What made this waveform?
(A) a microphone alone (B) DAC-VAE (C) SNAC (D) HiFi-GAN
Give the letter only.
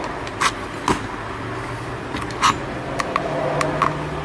A